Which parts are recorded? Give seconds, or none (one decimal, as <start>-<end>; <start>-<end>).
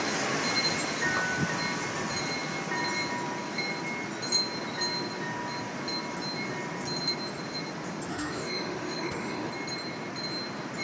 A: 0.0-8.1; 9.5-10.8